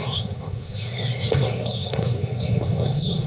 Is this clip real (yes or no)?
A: no